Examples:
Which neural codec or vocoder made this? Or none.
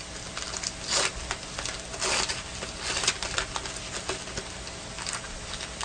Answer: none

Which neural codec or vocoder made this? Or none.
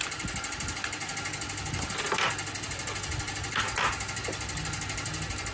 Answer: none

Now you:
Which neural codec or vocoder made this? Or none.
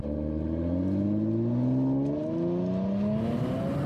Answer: none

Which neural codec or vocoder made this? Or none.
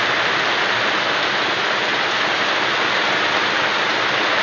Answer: none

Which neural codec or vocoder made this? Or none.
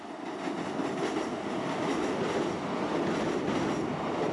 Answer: none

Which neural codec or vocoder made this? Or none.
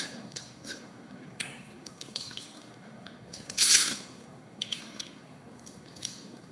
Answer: codec, SNAC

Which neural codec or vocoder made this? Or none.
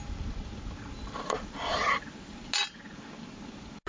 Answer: none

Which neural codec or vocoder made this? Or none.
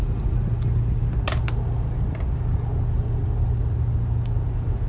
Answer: none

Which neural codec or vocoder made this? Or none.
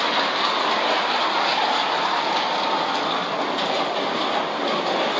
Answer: none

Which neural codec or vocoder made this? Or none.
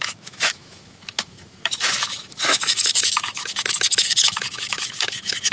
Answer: autoencoder, DAC-VAE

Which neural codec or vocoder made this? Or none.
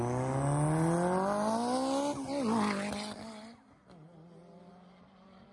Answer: none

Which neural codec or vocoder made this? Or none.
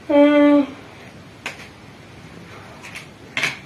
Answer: none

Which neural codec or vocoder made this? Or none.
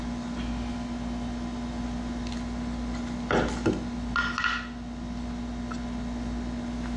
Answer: none